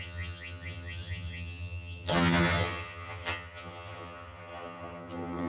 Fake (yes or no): yes